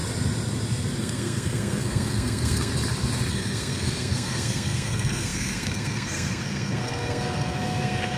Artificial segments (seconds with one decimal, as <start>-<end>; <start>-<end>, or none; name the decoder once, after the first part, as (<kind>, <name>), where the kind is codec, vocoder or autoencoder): 1.0-2.7 (codec, SNAC); 3.3-8.2